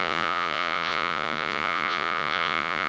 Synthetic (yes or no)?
yes